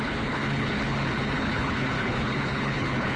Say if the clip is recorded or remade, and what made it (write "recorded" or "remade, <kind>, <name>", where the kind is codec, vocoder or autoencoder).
remade, codec, HILCodec